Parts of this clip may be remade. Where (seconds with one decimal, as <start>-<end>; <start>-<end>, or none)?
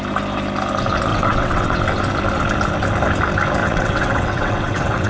1.1-1.8; 3.6-5.1